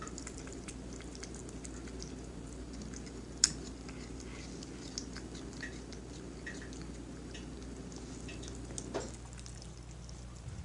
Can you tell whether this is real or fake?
real